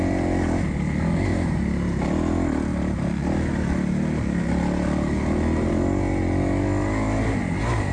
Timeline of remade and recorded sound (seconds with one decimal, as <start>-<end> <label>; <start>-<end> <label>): 0.0-1.3 recorded; 1.3-2.1 remade; 2.1-7.9 recorded

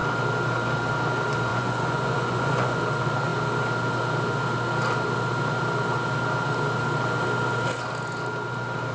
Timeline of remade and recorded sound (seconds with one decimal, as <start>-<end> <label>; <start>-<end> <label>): 0.0-1.5 recorded; 1.5-2.8 remade; 2.8-8.9 recorded

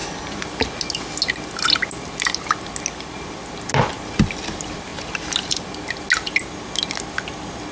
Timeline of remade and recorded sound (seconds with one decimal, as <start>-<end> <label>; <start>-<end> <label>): 0.0-7.7 recorded